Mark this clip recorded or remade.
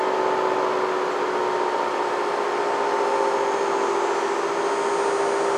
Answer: recorded